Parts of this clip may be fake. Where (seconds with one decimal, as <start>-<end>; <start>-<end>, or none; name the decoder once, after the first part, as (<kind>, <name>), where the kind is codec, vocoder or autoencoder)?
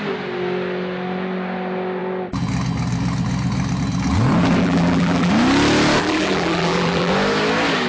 4.6-5.3 (vocoder, BigVGAN v2); 6.0-7.1